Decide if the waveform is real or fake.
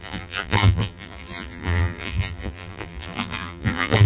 fake